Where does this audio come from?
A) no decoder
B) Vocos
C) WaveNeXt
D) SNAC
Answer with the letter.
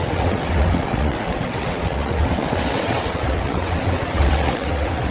C